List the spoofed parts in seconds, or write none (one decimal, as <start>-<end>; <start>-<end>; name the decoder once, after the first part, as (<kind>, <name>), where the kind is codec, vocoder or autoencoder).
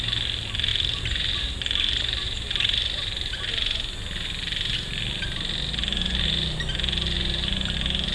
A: 0.7-3.5 (vocoder, BigVGAN v2)